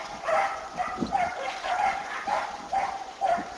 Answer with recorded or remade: remade